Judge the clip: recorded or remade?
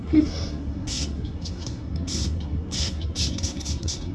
remade